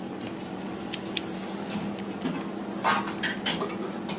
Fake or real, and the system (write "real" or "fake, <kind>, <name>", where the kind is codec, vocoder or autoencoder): real